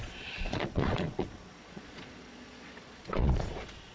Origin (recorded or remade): remade